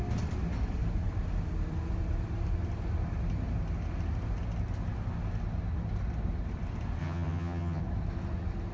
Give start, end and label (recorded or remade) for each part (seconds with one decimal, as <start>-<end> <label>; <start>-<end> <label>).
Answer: 0.0-7.0 recorded; 7.0-7.8 remade; 7.8-8.7 recorded